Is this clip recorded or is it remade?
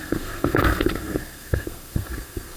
remade